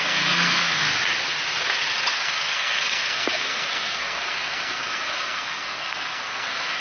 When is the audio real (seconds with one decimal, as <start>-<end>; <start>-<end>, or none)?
0.8-2.1